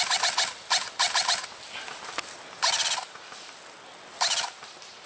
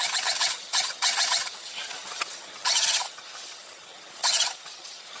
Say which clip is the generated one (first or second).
second